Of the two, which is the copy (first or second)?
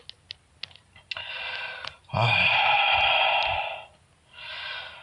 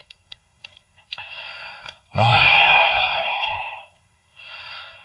second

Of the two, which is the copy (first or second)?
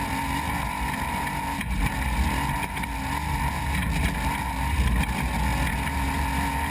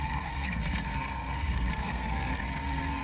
second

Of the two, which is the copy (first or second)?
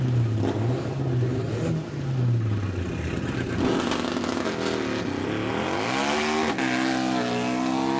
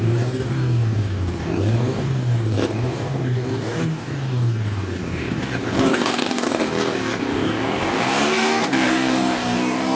second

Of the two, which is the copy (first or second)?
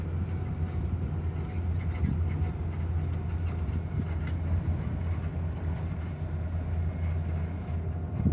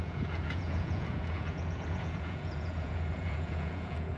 second